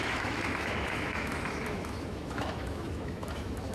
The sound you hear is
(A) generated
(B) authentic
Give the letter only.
A